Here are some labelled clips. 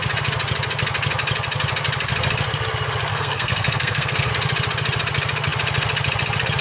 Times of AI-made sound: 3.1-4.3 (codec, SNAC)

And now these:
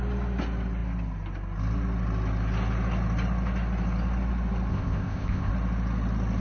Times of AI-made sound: 4.7-5.5 (codec, ZipCodec)

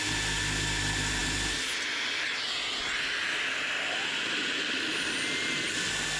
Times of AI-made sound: none

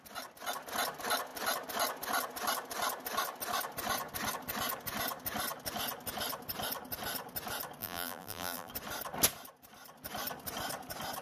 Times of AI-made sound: 7.8-8.7 (vocoder, BigVGAN v2)

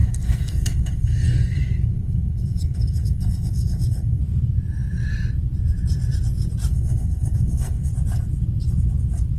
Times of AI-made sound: 0.0-4.2 (codec, SNAC); 6.7-7.9

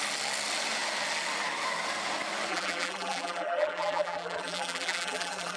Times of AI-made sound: 2.5-5.6 (vocoder, BigVGAN v2)